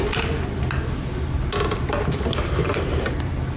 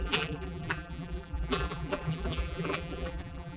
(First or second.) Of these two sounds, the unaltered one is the first